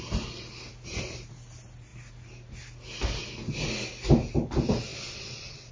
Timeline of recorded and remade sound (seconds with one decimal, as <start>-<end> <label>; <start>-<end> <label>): 0.0-4.9 recorded; 4.9-5.7 remade